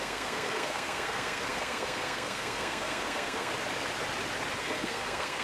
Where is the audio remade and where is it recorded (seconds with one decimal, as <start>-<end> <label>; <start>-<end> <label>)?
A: 0.0-3.5 remade; 3.5-4.6 recorded; 4.6-5.4 remade